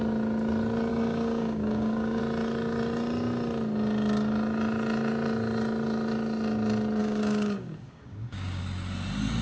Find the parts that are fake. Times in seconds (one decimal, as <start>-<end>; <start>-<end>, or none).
0.9-2.2; 7.0-8.6